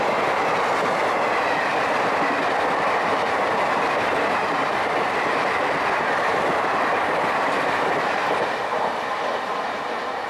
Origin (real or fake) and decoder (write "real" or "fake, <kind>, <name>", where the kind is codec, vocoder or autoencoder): real